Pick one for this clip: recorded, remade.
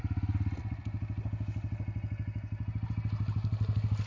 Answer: recorded